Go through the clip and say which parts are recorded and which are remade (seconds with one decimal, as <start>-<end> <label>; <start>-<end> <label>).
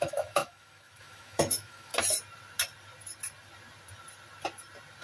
0.0-1.9 remade; 1.9-5.0 recorded